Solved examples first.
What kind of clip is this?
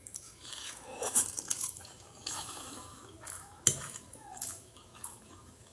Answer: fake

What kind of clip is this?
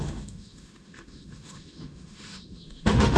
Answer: fake